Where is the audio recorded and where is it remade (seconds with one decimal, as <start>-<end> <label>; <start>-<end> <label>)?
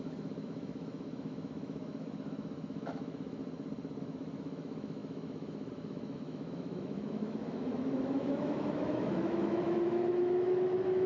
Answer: 0.0-3.4 remade; 3.4-4.0 recorded; 4.0-11.1 remade